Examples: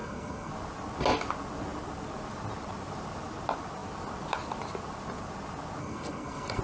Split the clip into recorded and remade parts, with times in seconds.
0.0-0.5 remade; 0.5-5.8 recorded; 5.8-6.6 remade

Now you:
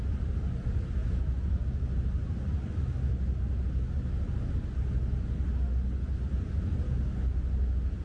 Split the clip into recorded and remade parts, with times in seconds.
0.0-8.0 recorded

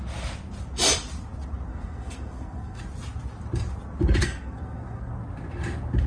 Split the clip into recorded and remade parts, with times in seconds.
0.0-1.7 recorded; 1.7-2.8 remade; 2.8-4.2 recorded; 4.2-5.1 remade; 5.1-6.1 recorded

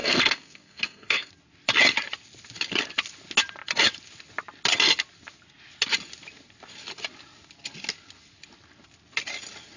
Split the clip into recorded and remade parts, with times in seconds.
0.0-1.3 remade; 1.3-9.8 recorded

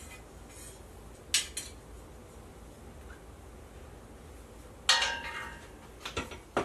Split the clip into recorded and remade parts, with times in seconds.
0.0-6.6 recorded

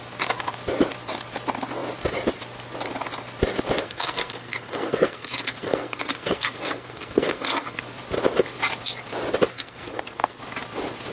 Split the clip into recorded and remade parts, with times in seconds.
0.0-3.8 recorded; 3.8-7.8 remade; 7.8-9.5 recorded; 9.5-10.4 remade; 10.4-11.1 recorded